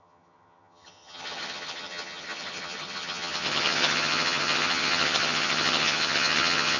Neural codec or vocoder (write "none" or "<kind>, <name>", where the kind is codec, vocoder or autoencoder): vocoder, HiFi-GAN